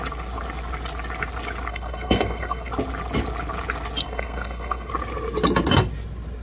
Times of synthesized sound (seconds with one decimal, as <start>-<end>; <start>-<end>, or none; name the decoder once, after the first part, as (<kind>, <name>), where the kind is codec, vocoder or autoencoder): 1.7-2.7 (codec, SNAC); 4.0-4.9